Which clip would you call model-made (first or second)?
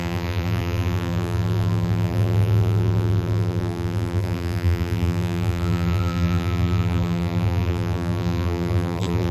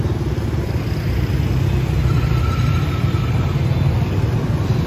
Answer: first